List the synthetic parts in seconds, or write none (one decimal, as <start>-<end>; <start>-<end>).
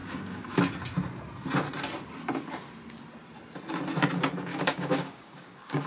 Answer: 0.0-0.6; 4.5-5.9